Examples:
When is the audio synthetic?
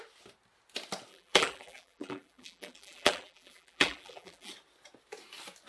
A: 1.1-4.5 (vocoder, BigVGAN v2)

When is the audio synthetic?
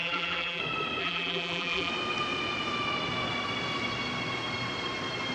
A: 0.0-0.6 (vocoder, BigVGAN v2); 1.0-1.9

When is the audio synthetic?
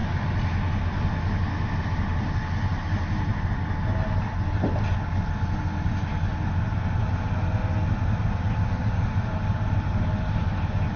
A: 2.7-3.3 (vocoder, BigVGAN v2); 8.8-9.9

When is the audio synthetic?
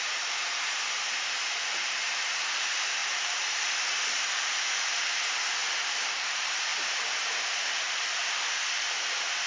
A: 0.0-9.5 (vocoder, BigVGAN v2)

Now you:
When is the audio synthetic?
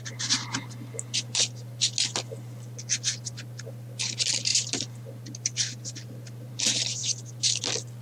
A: 4.5-6.5 (vocoder, BigVGAN v2); 7.0-7.6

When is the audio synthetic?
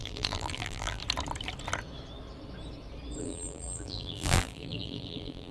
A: 0.0-1.0 (vocoder, BigVGAN v2); 3.2-5.5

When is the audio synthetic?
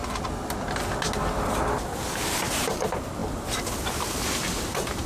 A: 3.2-5.1 (vocoder, BigVGAN v2)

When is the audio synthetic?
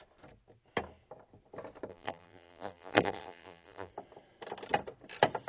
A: 1.9-3.9 (vocoder, BigVGAN v2)